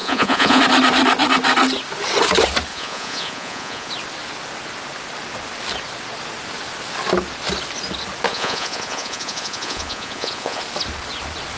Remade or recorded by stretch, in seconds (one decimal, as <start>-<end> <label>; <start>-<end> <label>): 0.0-0.6 remade; 0.6-2.7 recorded; 2.7-3.9 remade; 3.9-8.3 recorded; 8.3-10.6 remade; 10.6-11.6 recorded